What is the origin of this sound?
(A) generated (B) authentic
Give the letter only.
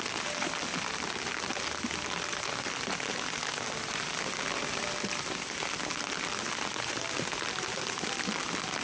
B